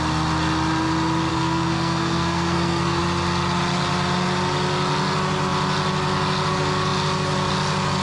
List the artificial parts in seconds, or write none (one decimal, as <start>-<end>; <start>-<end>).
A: 1.3-3.0